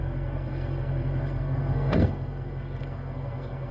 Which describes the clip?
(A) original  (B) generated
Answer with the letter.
B